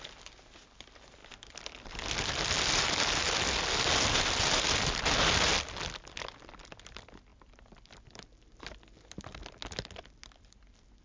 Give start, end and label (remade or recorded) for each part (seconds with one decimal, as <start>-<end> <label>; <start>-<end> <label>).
0.0-11.0 recorded